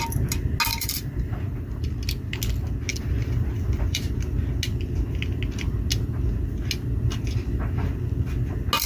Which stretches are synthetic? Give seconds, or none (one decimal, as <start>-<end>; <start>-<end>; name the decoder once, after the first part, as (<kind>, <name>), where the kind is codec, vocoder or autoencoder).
0.7-1.9 (vocoder, BigVGAN v2); 2.9-4.1